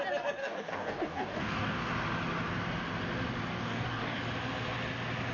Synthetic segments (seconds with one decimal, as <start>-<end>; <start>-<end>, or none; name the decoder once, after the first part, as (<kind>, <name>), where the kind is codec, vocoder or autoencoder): 0.4-1.9 (codec, DAC); 3.5-4.2